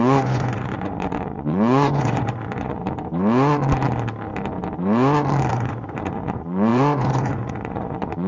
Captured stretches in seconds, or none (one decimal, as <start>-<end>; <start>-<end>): 2.8-5.5